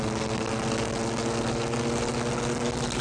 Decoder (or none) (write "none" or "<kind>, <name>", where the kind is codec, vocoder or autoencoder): none